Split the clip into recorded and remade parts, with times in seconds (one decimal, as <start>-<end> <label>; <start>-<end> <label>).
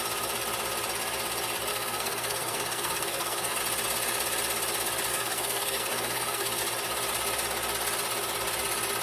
0.0-1.7 recorded; 1.7-3.6 remade; 3.6-5.1 recorded; 5.1-6.6 remade; 6.6-9.0 recorded